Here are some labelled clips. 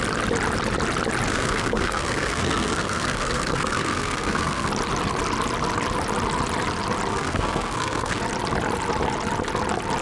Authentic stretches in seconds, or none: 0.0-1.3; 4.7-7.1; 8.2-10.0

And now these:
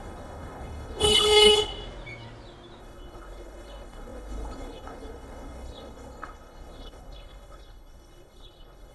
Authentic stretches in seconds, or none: 1.7-2.8

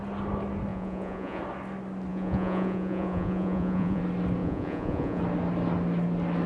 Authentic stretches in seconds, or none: 0.0-0.7; 1.4-2.1; 4.0-4.4; 5.2-6.5